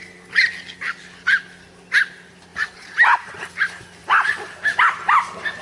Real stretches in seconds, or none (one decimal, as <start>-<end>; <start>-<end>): 0.0-2.5; 3.4-4.0; 4.5-5.6